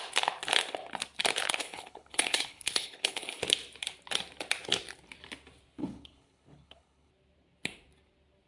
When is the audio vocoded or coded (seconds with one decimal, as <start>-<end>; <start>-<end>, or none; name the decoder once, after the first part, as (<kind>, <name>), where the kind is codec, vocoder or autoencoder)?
1.6-3.4 (codec, HILCodec); 5.8-7.1